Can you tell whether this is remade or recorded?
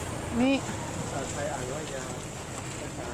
recorded